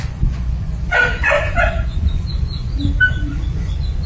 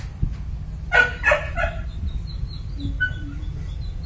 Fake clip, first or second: first